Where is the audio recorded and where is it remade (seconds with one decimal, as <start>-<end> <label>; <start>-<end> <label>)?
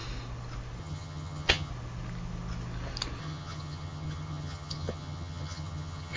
0.0-0.8 recorded; 0.8-1.7 remade; 1.7-3.2 recorded; 3.2-6.2 remade